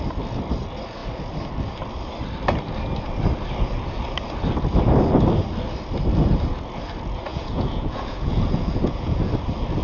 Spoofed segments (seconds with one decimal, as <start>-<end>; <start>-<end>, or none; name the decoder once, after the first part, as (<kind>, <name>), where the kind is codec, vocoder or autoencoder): 7.3-9.3 (vocoder, Vocos)

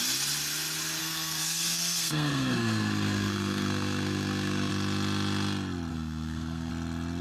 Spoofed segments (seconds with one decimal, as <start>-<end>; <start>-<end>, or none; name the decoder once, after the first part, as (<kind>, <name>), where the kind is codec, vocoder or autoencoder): 1.0-4.7 (codec, SNAC); 5.9-6.7

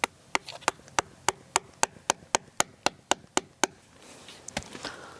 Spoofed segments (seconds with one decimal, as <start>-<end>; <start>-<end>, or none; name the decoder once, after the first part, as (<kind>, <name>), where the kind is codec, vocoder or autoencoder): 0.4-1.0 (vocoder, BigVGAN v2)